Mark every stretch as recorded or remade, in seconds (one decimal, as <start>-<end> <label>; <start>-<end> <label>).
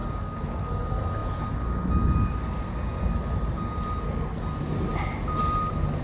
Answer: 0.0-0.7 remade; 0.7-6.0 recorded